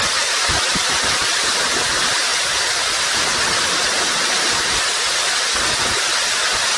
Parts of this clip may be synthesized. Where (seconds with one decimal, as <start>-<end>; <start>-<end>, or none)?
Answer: none